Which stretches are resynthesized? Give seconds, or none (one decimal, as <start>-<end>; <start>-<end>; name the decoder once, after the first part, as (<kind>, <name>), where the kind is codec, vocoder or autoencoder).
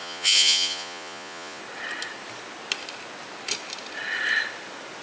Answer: 0.0-1.6 (vocoder, Vocos)